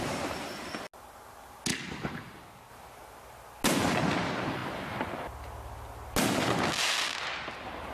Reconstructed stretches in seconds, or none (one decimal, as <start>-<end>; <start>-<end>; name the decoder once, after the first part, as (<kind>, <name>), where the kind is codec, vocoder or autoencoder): none